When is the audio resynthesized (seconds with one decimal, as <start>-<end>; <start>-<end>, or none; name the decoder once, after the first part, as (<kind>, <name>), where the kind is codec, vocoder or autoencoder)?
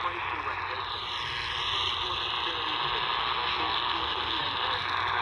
3.2-4.4 (codec, SNAC)